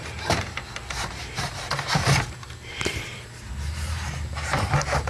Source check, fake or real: fake